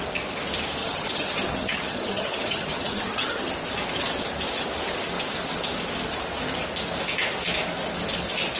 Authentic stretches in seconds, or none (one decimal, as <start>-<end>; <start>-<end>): 0.0-0.8; 3.5-8.6